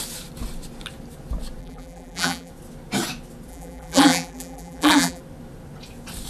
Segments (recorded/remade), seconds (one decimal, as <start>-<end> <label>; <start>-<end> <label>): 0.0-1.6 recorded; 1.6-2.5 remade; 2.5-3.5 recorded; 3.5-5.2 remade; 5.2-6.3 recorded